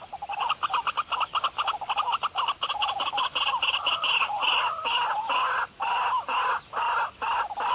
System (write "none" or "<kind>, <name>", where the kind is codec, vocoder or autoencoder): none